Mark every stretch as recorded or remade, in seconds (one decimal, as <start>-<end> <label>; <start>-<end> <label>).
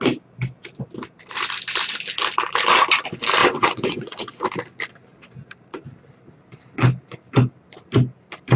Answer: 0.0-3.4 recorded; 3.4-4.3 remade; 4.3-8.6 recorded